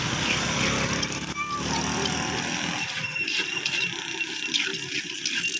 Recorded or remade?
recorded